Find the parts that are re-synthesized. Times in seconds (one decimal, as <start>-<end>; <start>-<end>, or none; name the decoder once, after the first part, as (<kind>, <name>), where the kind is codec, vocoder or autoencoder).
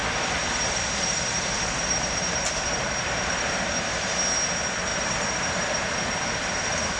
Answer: 0.0-4.2 (vocoder, BigVGAN v2); 4.9-6.5